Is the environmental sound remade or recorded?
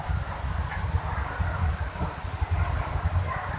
recorded